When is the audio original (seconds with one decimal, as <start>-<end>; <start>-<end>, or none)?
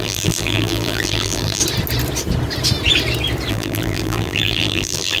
1.6-3.5